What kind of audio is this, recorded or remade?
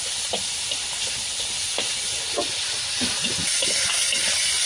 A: recorded